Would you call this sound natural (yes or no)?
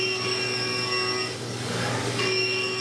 no